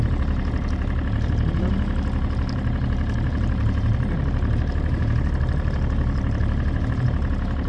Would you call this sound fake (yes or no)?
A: yes